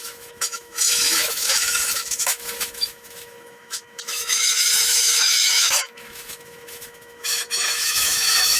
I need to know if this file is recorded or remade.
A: remade